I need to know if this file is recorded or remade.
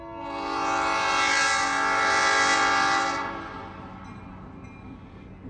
recorded